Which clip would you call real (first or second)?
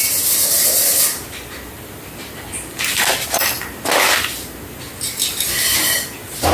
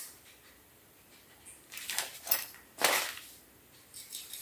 first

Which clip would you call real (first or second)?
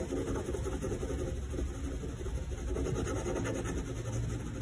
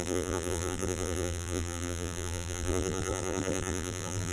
first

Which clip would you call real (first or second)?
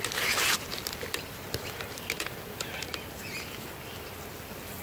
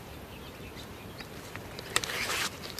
first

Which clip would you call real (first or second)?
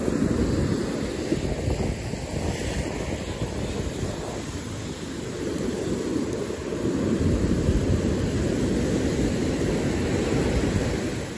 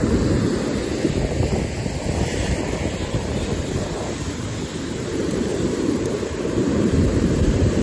first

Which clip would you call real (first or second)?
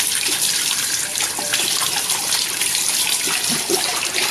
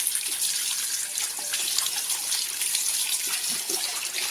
second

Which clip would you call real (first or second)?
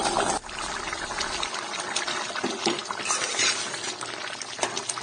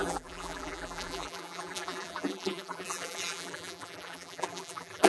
first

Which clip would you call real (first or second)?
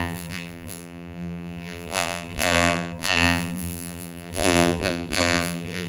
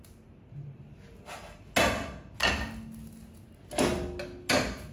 second